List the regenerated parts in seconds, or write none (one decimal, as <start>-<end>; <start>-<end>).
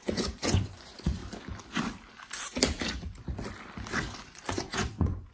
0.0-1.2; 4.2-5.3